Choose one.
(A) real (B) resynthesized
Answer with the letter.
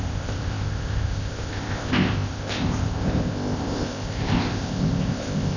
B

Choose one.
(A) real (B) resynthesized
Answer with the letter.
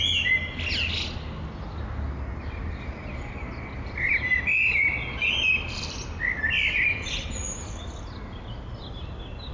A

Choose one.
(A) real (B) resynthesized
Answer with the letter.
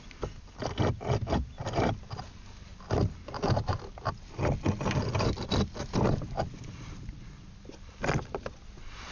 A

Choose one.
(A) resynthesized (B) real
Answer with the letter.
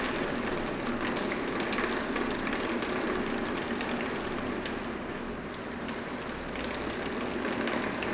B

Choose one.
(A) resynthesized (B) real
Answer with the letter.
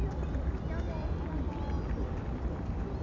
B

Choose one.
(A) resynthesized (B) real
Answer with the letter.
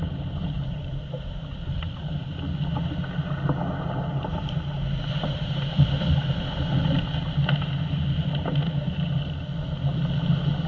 B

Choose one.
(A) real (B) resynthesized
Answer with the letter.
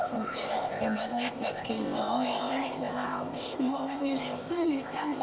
B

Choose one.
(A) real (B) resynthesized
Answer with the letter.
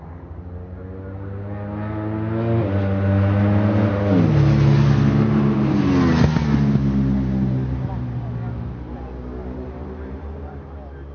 A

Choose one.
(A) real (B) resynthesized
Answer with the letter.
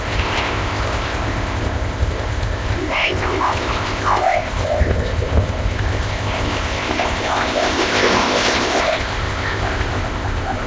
B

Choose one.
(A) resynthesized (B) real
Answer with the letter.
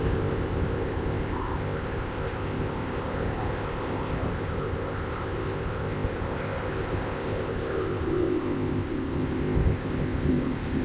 A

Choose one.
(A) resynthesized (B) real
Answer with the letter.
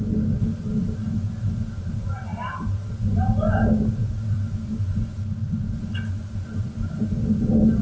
B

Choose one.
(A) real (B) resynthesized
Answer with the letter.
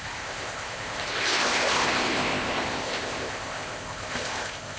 B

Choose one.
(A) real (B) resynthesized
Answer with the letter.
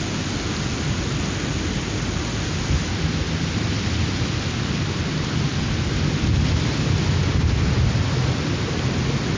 A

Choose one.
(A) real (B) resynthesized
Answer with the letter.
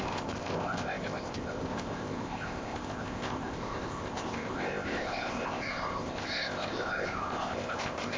B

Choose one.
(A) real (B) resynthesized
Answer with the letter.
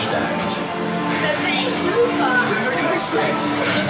A